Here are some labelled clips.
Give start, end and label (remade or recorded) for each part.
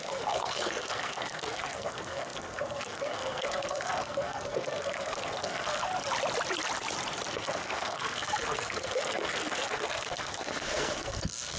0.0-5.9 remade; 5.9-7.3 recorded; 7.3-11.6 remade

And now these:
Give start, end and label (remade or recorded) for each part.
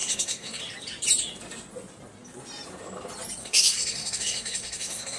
0.0-0.6 remade; 0.6-3.4 recorded; 3.4-5.2 remade